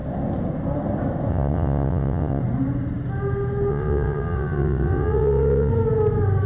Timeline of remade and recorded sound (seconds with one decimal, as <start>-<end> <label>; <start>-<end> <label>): 0.0-1.3 recorded; 1.3-2.4 remade; 2.4-3.7 recorded; 3.7-5.7 remade; 5.7-6.5 recorded